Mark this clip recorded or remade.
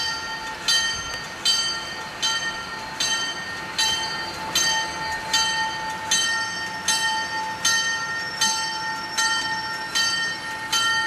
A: recorded